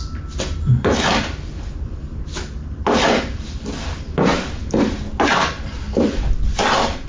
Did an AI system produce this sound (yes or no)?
no